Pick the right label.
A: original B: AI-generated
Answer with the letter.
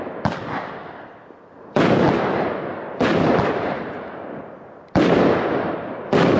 A